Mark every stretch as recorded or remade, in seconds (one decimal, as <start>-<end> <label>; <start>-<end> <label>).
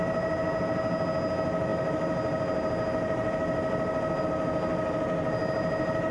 0.0-6.1 recorded